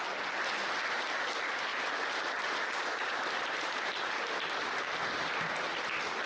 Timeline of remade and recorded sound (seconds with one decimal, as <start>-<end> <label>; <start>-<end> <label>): 0.0-1.7 recorded; 1.7-5.5 remade; 5.5-6.3 recorded